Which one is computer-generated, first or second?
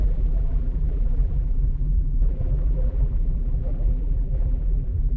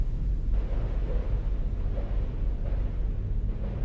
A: first